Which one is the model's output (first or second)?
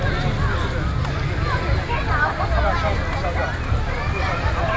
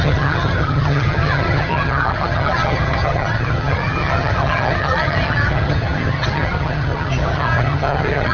second